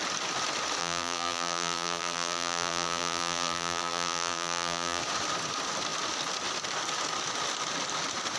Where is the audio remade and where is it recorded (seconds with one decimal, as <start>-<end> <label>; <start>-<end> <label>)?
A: 0.0-0.8 recorded; 0.8-5.0 remade; 5.0-8.4 recorded